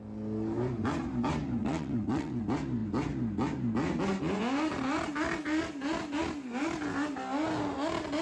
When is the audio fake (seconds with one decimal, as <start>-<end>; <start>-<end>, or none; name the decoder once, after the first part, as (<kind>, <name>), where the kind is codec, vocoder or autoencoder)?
1.6-2.4 (vocoder, WaveNeXt)